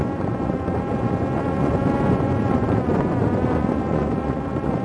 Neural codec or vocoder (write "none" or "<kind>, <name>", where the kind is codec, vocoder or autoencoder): vocoder, Vocos